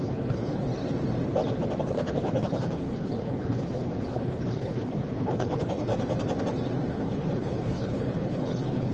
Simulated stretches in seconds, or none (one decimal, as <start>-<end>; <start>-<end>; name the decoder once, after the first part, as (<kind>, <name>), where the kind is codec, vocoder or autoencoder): 0.0-0.7 (codec, HILCodec); 1.8-5.9; 6.9-8.9